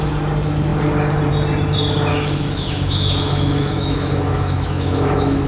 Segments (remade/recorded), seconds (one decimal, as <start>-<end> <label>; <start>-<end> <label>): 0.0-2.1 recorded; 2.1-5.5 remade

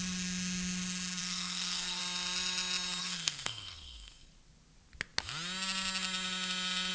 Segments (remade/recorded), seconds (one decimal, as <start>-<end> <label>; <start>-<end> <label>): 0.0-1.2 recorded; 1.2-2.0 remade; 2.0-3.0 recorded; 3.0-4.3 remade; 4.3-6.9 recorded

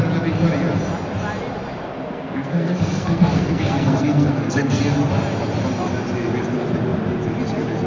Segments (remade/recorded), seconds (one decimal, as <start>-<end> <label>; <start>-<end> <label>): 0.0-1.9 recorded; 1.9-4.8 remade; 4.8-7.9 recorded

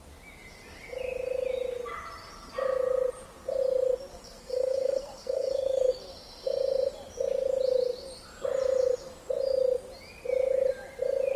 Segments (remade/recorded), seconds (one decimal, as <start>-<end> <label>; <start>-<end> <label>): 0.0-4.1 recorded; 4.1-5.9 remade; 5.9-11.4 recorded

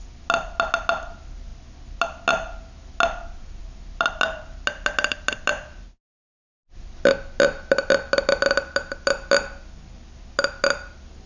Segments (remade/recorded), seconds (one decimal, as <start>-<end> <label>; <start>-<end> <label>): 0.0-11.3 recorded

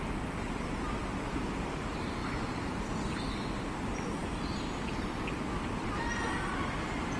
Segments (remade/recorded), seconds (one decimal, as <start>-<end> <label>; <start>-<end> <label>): 0.0-7.2 recorded